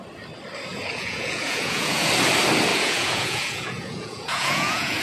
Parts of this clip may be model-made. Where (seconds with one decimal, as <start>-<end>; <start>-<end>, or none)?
0.7-2.1; 2.7-5.0